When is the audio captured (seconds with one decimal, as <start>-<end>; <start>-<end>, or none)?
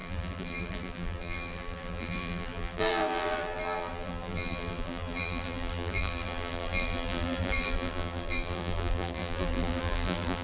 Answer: none